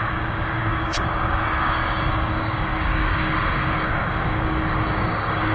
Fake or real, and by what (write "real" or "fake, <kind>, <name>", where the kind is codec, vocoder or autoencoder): fake, codec, DAC